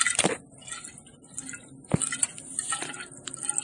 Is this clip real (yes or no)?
yes